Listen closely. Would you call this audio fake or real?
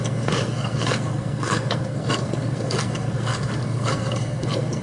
fake